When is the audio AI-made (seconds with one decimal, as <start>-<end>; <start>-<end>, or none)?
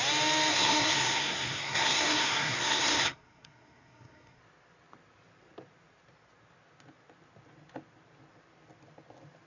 0.5-4.4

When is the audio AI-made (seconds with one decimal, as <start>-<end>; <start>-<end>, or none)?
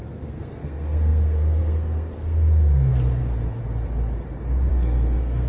0.0-2.9; 4.7-5.5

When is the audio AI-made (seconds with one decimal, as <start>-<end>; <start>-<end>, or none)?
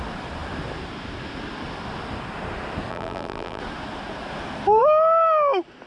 2.9-3.6